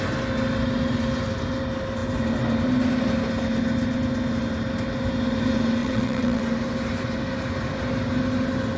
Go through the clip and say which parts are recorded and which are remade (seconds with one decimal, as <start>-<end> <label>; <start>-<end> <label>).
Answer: 0.0-5.8 recorded; 5.8-6.4 remade; 6.4-8.8 recorded